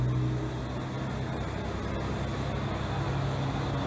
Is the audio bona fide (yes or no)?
yes